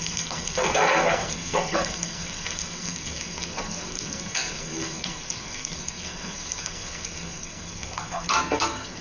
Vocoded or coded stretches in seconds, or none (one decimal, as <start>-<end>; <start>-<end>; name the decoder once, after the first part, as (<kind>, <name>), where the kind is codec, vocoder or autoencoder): 0.0-9.0 (codec, SNAC)

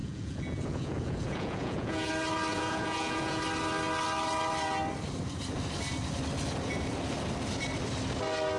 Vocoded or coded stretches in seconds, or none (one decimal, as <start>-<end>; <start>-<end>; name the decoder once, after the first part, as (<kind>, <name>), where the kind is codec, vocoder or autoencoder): 0.0-2.1 (vocoder, Vocos); 2.5-3.4